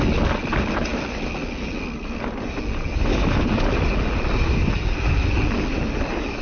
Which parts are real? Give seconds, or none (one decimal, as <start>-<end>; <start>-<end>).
0.0-6.4